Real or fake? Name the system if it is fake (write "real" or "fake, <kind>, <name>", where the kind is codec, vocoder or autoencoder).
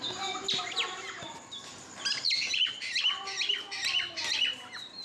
real